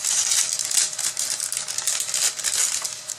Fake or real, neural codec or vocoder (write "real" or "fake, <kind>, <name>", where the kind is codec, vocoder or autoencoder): real